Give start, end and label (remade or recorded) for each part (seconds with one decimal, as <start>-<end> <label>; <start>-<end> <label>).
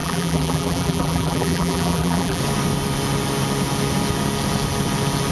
0.0-2.4 remade; 2.4-5.3 recorded